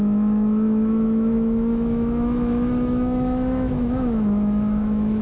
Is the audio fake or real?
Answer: fake